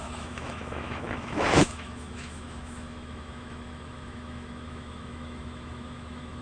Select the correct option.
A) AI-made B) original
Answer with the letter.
A